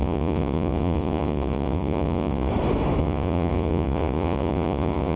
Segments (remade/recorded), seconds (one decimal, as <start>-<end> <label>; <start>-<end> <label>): 0.0-2.5 remade; 2.5-3.0 recorded; 3.0-5.2 remade